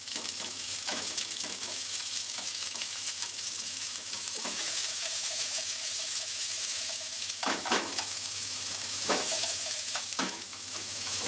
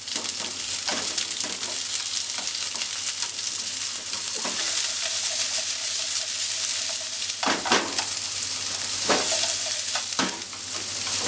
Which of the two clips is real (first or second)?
second